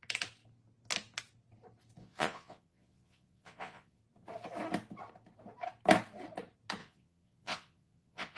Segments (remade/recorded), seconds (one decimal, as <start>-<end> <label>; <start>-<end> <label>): 0.0-2.0 recorded; 2.0-4.0 remade; 4.0-6.8 recorded; 6.8-8.4 remade